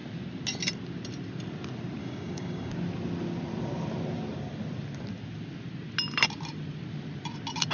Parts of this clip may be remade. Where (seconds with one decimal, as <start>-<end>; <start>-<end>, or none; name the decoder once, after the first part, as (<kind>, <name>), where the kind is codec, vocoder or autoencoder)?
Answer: 2.0-2.7 (codec, DAC)